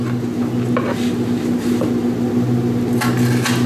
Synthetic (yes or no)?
no